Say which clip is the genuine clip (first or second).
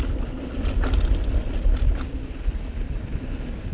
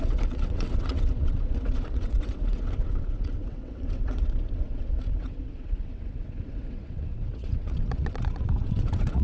first